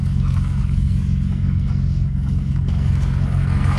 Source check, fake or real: fake